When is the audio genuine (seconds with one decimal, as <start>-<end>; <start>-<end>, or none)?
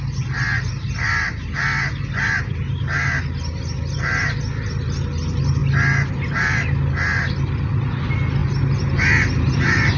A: 0.0-10.0